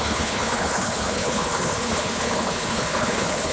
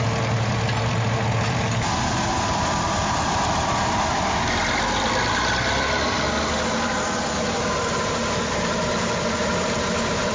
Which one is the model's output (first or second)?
first